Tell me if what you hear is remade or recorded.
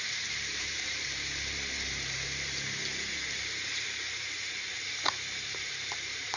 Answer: remade